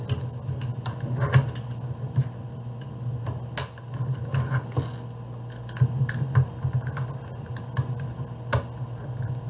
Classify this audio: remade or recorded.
recorded